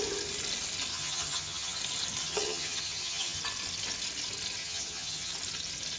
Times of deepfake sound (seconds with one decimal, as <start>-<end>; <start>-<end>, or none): 0.9-1.8; 2.2-3.4; 4.6-5.3